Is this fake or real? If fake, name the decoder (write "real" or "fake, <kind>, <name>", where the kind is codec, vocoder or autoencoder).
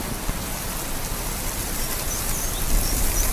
real